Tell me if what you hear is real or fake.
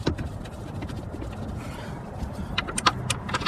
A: real